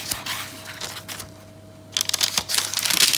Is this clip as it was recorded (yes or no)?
yes